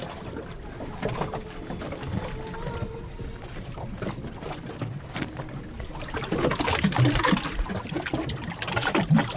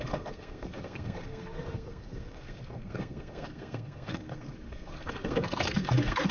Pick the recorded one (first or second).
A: first